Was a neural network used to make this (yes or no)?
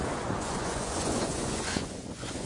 yes